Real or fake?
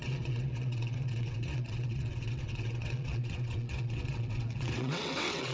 fake